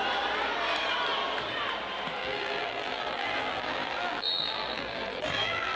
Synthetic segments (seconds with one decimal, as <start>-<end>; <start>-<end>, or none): 2.2-5.8